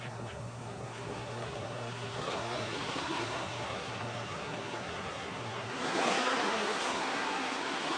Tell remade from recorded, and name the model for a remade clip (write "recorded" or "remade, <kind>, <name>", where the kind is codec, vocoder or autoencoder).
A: remade, codec, SNAC